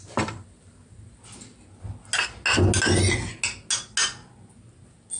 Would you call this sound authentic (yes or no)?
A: yes